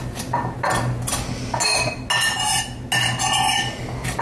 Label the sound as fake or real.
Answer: real